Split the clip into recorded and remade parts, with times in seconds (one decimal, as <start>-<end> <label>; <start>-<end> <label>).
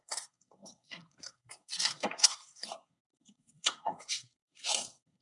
0.0-5.2 remade